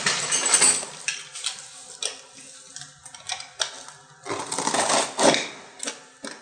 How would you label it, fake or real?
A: real